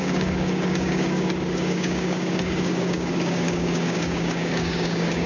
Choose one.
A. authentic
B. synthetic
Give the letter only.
B